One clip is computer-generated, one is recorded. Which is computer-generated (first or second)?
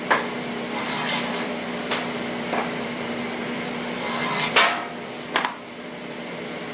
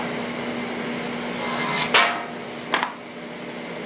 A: first